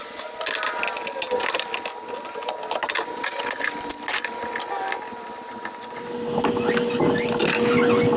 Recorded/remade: recorded